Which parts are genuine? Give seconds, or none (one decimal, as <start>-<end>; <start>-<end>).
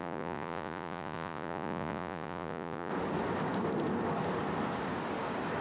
2.9-5.6